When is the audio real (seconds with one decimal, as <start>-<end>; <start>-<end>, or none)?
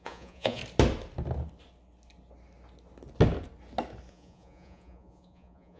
0.6-4.1